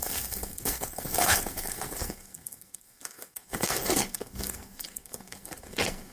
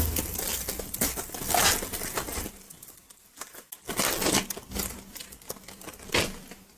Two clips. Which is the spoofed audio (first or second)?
first